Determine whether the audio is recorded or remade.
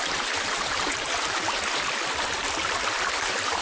remade